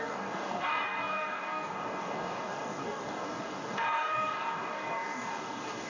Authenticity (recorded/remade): remade